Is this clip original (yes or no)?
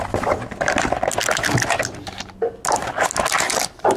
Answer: yes